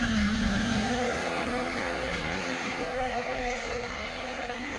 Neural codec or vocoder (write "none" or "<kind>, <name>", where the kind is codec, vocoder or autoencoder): codec, SNAC